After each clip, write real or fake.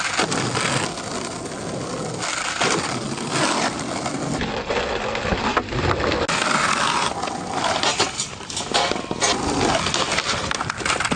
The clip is real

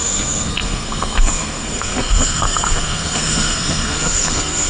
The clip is fake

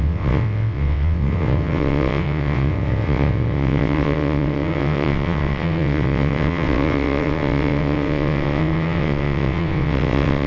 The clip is fake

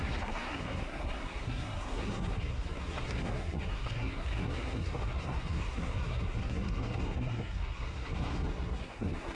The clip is fake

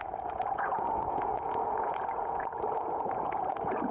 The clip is fake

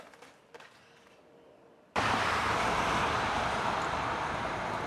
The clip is fake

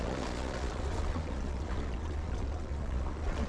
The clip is fake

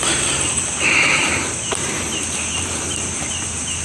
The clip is fake